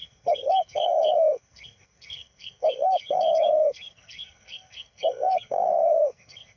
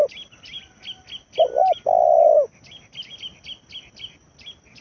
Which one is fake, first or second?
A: first